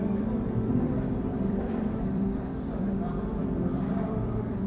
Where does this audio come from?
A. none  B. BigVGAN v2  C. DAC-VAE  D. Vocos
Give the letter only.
B